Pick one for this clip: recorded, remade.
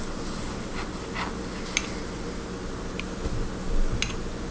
recorded